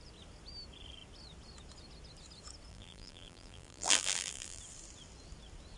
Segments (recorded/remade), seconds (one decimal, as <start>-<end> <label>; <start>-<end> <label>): 0.0-2.7 recorded; 2.7-4.6 remade; 4.6-5.8 recorded